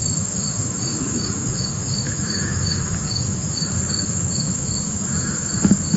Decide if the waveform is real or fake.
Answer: fake